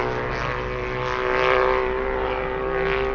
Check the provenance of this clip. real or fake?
real